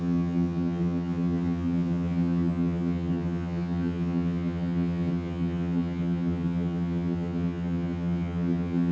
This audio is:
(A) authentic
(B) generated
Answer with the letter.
B